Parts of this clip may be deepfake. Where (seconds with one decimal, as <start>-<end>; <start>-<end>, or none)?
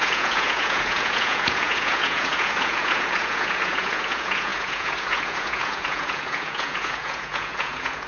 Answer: 0.0-8.1